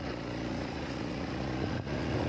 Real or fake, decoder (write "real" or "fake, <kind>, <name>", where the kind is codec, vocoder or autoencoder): fake, vocoder, Vocos